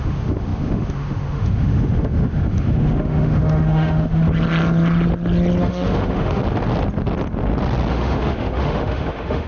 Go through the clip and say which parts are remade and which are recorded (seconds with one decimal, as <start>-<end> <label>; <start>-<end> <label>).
0.0-4.2 remade; 4.2-5.6 recorded; 5.6-6.4 remade; 6.4-7.9 recorded; 7.9-9.5 remade